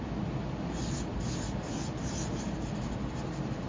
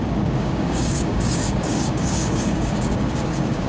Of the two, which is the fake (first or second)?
second